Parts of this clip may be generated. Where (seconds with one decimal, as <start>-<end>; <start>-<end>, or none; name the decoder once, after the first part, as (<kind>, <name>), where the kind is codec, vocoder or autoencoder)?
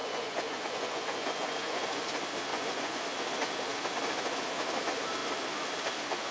0.0-2.0 (vocoder, Vocos); 2.5-3.0